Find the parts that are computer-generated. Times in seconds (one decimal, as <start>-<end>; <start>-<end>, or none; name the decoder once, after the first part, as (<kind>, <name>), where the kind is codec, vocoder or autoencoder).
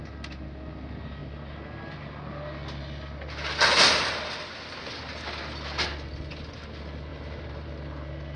7.1-7.7 (vocoder, BigVGAN v2)